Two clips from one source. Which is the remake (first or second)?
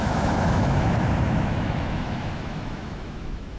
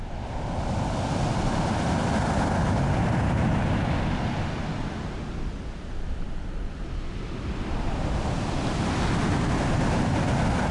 first